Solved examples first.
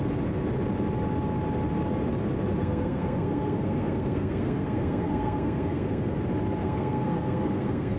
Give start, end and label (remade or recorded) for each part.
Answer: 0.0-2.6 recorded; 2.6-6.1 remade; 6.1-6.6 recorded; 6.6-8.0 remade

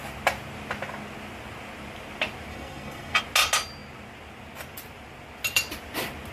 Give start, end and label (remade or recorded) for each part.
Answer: 0.0-2.5 recorded; 2.5-3.2 remade; 3.2-6.3 recorded

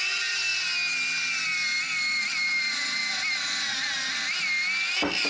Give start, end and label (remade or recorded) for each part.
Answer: 0.0-5.3 recorded